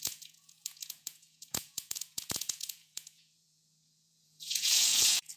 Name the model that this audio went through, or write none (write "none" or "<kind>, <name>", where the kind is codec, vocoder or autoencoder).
vocoder, Vocos